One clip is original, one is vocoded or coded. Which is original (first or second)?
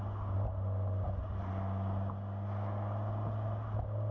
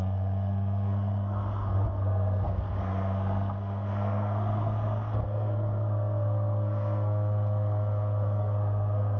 first